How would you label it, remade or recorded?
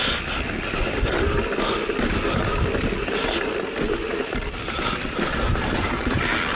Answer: recorded